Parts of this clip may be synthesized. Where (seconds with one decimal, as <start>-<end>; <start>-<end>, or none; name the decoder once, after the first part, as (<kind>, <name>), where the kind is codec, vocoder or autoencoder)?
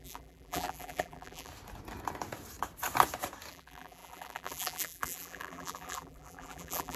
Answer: 0.0-1.5 (vocoder, BigVGAN v2); 3.5-7.0